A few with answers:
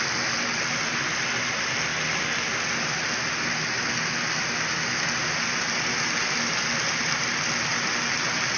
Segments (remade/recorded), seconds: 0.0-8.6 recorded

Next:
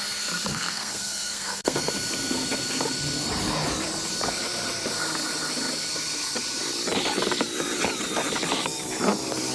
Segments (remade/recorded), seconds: 0.0-0.5 recorded; 0.5-1.9 remade; 1.9-9.5 recorded

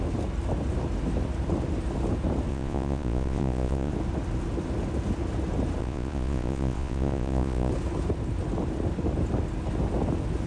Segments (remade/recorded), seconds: 0.0-2.5 recorded; 2.5-3.9 remade; 3.9-5.8 recorded; 5.8-7.7 remade; 7.7-10.5 recorded